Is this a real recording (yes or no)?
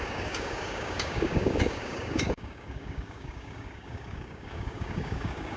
no